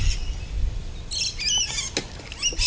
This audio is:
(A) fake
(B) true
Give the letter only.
B